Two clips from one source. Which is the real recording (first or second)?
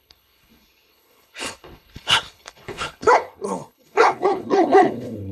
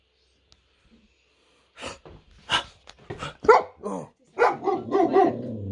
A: second